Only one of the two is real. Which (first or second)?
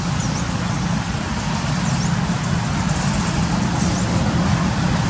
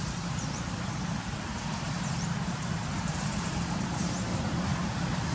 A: first